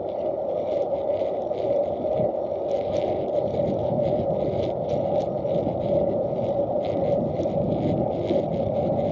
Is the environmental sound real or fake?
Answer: real